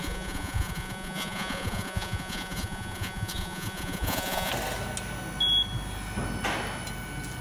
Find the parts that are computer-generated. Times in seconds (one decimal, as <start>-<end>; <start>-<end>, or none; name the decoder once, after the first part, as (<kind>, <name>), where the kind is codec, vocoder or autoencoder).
0.0-4.5 (vocoder, Vocos)